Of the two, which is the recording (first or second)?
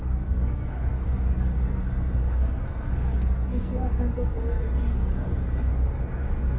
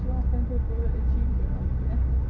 second